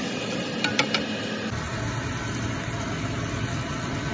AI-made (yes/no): no